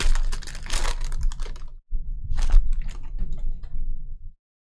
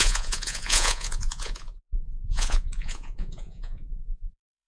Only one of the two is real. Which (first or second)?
first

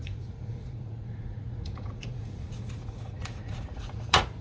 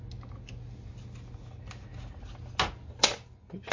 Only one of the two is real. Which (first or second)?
second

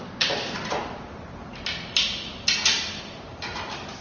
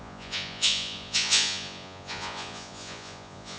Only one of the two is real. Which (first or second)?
first